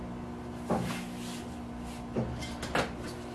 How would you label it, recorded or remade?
recorded